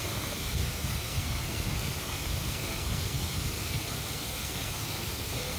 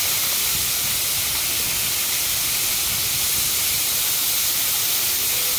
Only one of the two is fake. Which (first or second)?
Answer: first